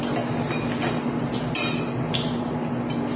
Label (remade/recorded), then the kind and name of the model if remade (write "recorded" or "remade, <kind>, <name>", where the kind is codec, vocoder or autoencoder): recorded